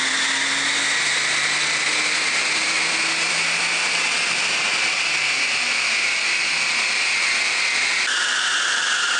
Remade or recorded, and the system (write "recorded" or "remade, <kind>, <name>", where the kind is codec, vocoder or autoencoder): recorded